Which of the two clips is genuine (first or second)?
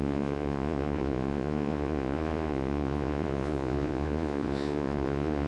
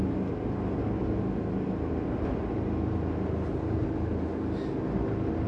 second